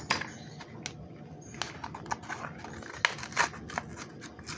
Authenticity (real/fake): real